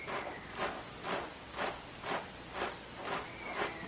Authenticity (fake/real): real